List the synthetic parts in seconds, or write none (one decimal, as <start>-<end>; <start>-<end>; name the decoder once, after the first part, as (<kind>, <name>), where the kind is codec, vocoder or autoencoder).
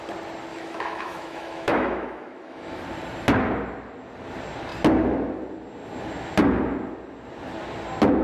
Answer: 0.5-2.8 (autoencoder, DAC-VAE)